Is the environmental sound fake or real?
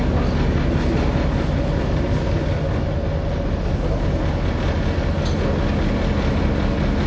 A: real